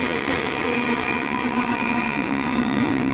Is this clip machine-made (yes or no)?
yes